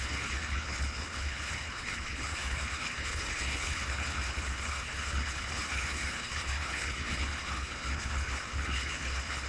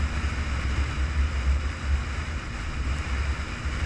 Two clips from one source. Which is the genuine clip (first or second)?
second